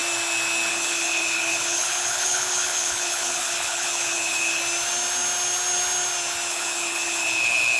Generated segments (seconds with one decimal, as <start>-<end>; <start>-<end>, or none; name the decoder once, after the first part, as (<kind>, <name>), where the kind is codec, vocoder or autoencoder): 0.7-4.6 (codec, HILCodec); 6.5-7.8